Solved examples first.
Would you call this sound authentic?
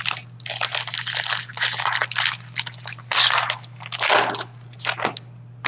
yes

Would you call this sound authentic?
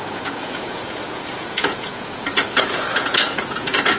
no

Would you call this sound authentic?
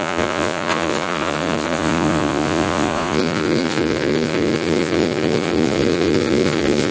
no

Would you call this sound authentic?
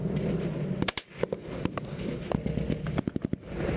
yes